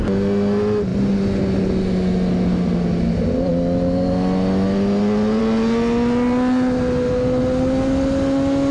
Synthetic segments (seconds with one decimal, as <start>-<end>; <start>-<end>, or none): none